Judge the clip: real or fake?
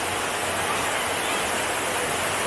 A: real